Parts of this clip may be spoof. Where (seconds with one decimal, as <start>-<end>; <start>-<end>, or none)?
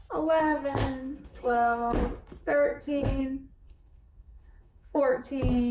0.4-2.0; 2.7-3.2; 3.6-5.0